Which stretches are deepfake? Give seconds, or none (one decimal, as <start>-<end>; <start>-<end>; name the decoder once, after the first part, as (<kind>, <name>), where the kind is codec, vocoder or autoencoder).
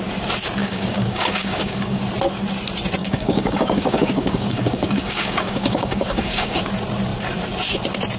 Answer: 0.6-2.0 (codec, DAC); 3.0-6.6